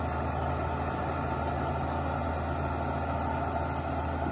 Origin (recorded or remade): recorded